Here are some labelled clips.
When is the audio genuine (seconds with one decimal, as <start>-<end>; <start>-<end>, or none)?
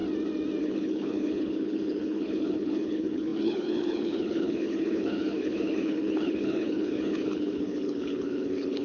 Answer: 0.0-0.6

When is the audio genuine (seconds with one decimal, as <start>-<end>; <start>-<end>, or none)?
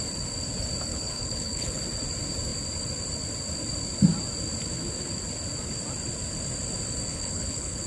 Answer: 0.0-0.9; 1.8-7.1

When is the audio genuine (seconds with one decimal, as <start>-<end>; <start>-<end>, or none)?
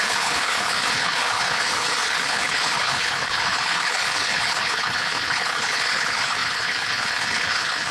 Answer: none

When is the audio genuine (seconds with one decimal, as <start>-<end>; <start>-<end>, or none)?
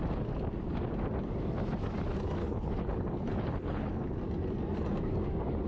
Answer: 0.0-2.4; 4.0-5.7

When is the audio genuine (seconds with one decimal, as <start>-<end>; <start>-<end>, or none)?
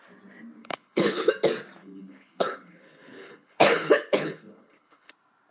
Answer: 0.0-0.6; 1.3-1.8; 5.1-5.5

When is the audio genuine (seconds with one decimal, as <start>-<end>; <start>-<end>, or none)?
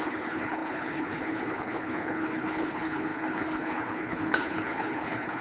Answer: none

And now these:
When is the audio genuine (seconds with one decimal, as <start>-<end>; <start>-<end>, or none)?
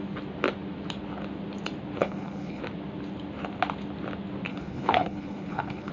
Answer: 0.0-2.0; 2.6-4.5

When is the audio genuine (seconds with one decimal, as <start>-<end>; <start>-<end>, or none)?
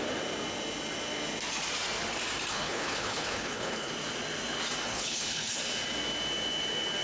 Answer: 0.0-2.5; 3.9-4.8; 5.6-7.0